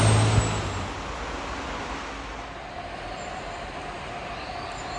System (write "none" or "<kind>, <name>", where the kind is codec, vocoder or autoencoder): none